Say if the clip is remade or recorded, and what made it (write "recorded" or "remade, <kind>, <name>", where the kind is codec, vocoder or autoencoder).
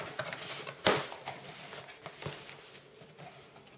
recorded